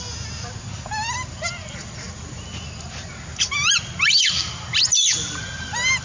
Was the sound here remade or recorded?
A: recorded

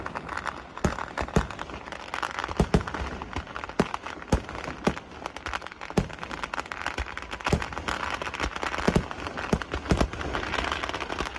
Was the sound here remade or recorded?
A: recorded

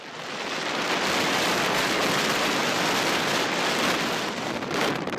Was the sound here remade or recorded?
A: remade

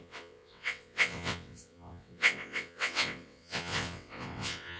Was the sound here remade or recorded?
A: remade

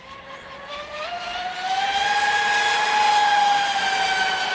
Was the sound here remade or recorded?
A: recorded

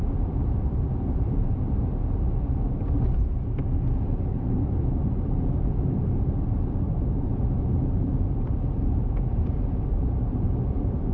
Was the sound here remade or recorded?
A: remade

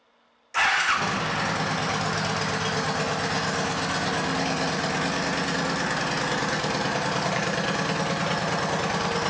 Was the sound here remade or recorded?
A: recorded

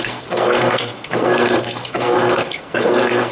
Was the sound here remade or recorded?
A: remade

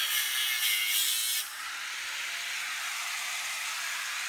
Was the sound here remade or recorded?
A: recorded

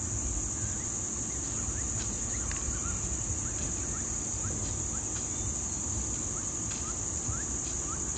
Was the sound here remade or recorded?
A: recorded